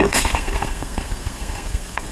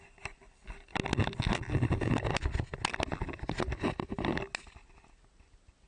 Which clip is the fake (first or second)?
first